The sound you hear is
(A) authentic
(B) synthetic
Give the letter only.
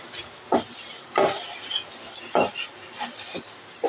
A